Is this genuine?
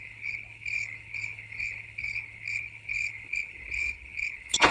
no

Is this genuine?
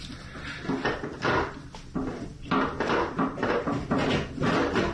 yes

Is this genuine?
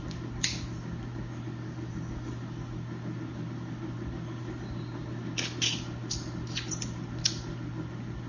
yes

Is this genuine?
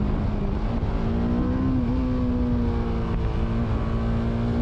yes